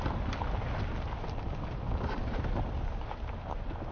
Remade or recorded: remade